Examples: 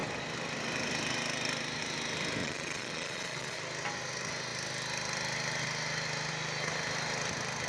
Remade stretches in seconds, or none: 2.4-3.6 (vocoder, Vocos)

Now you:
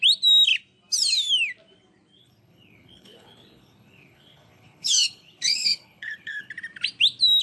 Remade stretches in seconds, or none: 2.2-6.5 (codec, HILCodec)

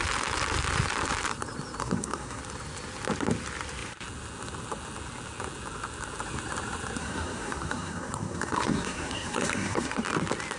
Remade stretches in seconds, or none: 1.8-2.4 (codec, SNAC); 7.0-10.0

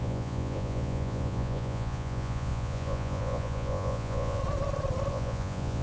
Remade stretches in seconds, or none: 0.0-4.4 (vocoder, Vocos); 5.1-5.8

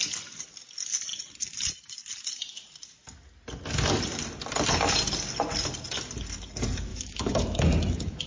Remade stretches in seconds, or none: 6.9-8.3 (autoencoder, DAC-VAE)